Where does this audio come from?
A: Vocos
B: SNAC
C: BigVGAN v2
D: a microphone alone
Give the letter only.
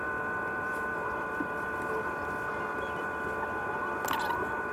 D